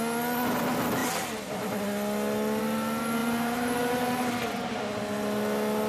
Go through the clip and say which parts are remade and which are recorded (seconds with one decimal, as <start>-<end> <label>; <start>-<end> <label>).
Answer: 0.0-3.2 recorded; 3.2-4.2 remade; 4.2-5.9 recorded